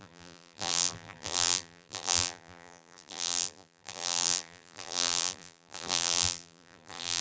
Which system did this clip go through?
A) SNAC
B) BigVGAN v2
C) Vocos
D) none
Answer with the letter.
B